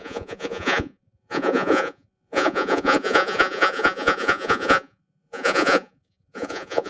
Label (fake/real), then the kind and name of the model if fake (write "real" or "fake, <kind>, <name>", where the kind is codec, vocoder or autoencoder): fake, vocoder, Vocos